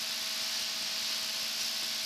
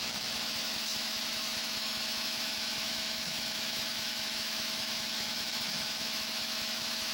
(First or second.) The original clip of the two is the first